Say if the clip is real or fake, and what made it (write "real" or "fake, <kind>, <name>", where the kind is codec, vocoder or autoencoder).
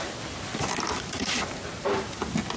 real